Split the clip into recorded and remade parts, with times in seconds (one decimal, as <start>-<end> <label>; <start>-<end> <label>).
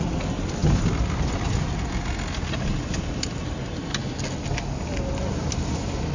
0.0-6.1 recorded